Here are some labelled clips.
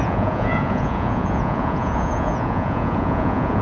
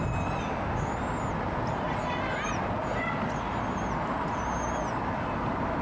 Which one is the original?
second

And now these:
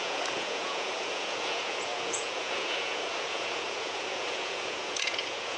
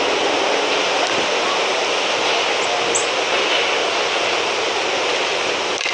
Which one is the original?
second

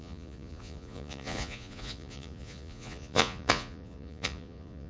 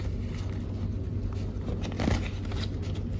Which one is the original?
second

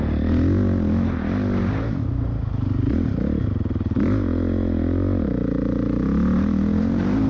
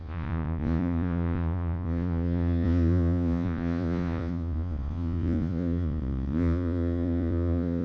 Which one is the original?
first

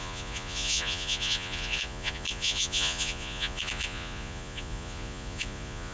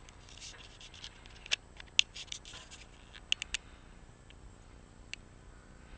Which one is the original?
second